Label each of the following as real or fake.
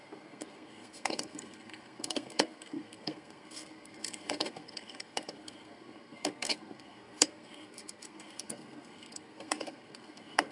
fake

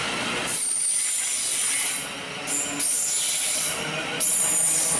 real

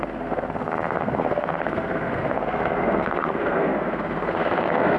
fake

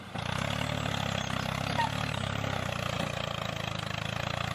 real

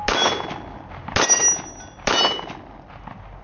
real